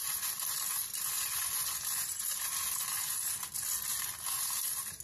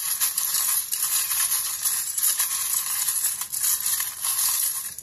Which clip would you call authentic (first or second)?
first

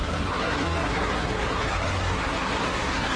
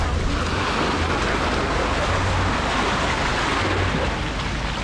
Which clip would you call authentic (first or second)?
second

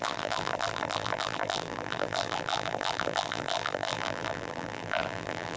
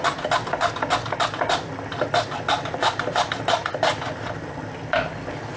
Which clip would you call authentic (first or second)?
second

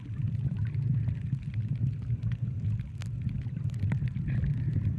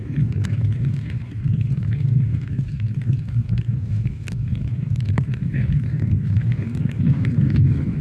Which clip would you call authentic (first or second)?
first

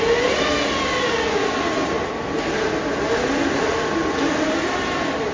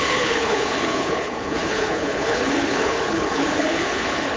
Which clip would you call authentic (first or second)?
first